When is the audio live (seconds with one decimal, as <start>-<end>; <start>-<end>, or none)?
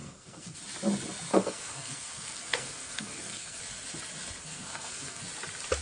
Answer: 0.6-1.3; 3.6-4.4; 5.2-5.8